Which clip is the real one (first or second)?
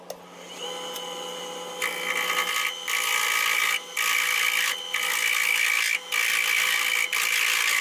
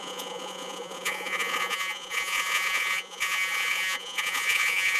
first